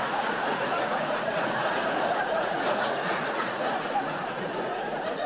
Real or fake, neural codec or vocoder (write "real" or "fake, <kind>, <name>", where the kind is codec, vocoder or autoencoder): fake, vocoder, Vocos